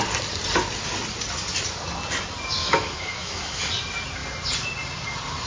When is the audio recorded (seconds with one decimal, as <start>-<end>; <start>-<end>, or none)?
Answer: 0.0-2.6; 3.7-5.5